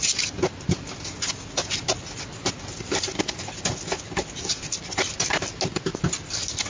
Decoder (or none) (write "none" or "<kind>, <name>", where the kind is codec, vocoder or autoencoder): none